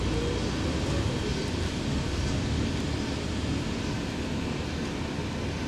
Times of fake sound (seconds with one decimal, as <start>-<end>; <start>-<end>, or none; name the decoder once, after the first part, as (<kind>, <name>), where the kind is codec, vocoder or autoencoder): 1.3-4.7 (vocoder, BigVGAN v2)